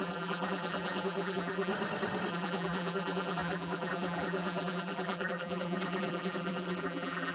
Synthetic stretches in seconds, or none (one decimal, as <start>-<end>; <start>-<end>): 0.0-1.7; 2.3-7.3